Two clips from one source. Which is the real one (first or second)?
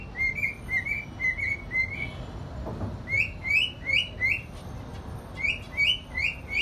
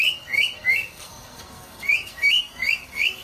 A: first